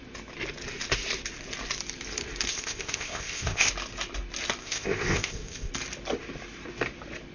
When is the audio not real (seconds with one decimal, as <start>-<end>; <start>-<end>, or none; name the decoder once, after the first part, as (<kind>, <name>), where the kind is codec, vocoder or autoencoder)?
2.5-3.7 (codec, ZipCodec); 4.6-5.7